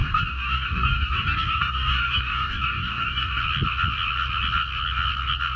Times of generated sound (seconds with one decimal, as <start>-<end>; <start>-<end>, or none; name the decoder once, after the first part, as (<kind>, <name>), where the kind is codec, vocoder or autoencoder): 0.0-3.4 (codec, DAC)